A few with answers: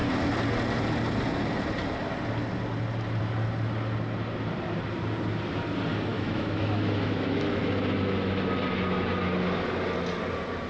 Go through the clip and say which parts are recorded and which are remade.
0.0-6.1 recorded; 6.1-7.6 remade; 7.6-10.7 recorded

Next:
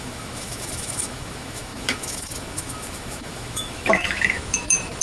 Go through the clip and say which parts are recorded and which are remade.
0.0-5.0 remade

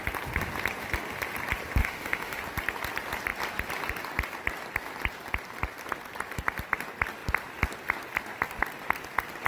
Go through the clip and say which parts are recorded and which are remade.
0.0-1.8 recorded; 1.8-2.4 remade; 2.4-9.5 recorded

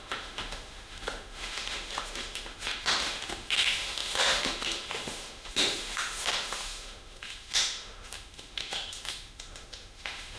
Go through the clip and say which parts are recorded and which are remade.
0.0-10.4 remade

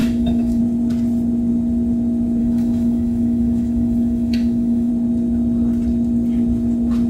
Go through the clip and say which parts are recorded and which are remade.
0.0-0.6 remade; 0.6-2.4 recorded; 2.4-4.9 remade; 4.9-7.1 recorded